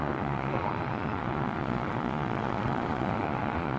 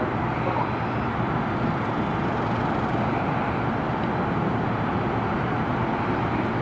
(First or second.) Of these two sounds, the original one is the second